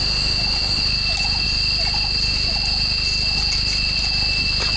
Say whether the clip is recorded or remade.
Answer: recorded